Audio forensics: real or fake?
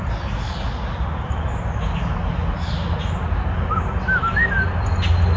real